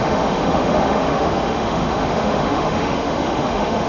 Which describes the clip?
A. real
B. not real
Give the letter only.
B